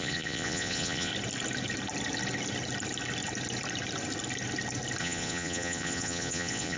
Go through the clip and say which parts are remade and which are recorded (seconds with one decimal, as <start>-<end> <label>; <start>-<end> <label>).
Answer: 0.0-1.1 remade; 1.1-5.0 recorded; 5.0-6.8 remade